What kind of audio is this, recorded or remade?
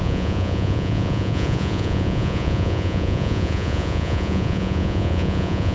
remade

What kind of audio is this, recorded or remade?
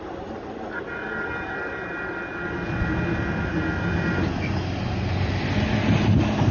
recorded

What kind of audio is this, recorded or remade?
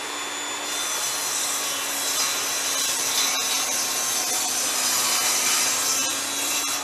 recorded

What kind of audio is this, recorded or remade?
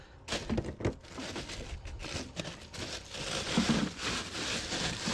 recorded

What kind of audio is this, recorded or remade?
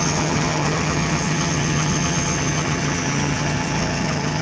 remade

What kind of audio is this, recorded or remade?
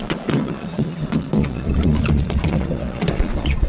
remade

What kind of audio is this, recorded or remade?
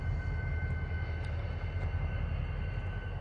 recorded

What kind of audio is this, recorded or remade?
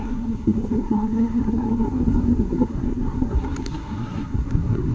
remade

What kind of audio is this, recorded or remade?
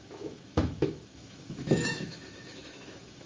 remade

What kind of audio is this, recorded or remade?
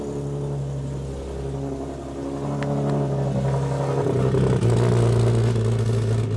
recorded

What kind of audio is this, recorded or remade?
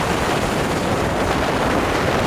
remade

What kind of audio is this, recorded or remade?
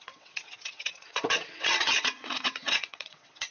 remade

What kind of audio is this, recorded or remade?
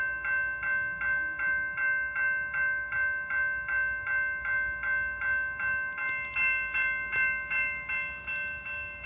recorded